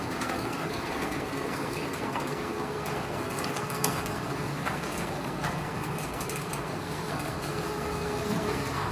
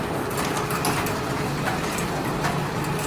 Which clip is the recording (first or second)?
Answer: second